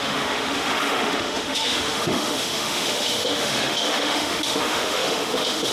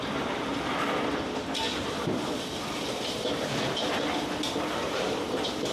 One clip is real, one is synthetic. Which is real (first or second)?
second